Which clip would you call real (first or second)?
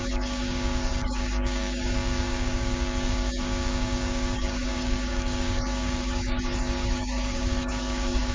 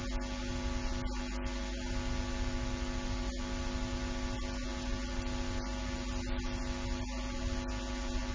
second